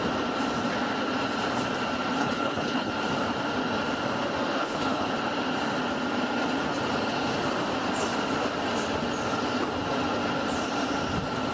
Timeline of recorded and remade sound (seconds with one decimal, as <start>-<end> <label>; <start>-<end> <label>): 0.0-2.2 recorded; 2.2-2.9 remade; 2.9-4.6 recorded; 4.6-5.1 remade; 5.1-11.5 recorded